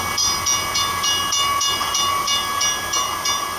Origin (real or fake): real